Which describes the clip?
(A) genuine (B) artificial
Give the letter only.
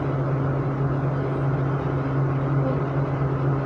A